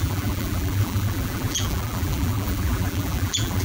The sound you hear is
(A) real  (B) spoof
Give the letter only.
B